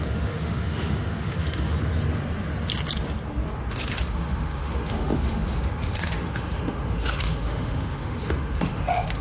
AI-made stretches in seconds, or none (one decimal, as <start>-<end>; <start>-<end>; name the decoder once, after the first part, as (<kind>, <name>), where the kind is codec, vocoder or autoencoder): 0.0-1.8 (autoencoder, DAC-VAE); 3.7-9.2